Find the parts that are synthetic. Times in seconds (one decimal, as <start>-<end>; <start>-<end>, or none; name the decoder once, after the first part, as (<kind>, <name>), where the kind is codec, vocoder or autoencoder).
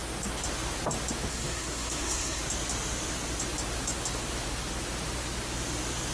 1.3-2.4 (codec, SNAC)